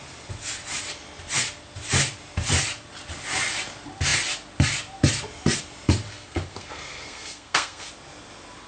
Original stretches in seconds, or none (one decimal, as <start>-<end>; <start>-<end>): 0.0-6.1; 7.9-8.7